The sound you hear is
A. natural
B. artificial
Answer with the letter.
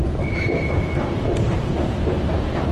A